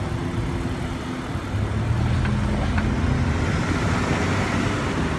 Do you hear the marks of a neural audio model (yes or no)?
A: no